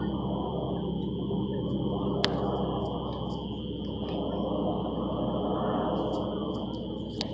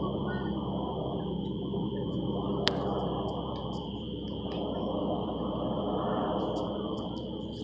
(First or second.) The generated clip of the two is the second